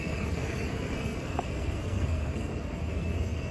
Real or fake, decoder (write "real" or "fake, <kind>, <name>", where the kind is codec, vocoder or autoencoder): fake, codec, SNAC